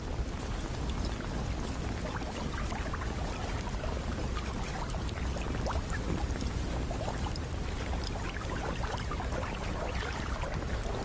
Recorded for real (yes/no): yes